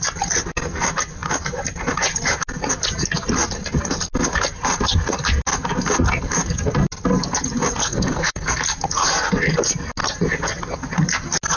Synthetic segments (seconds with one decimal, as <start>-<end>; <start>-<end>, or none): 7.8-8.6